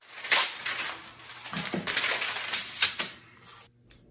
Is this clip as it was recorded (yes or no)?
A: yes